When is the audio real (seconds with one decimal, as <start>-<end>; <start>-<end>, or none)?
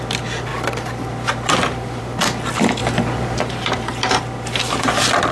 2.8-3.4